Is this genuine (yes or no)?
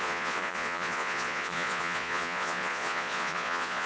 no